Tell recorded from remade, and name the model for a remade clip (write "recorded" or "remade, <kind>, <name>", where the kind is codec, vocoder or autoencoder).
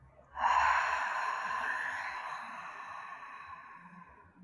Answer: recorded